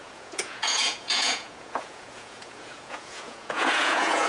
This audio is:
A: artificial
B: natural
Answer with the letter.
A